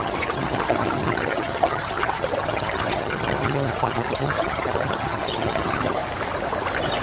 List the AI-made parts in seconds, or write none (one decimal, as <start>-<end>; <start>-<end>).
0.0-6.0